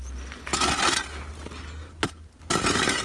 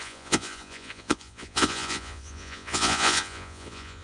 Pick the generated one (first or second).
second